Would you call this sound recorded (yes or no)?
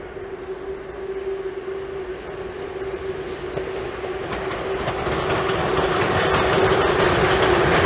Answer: yes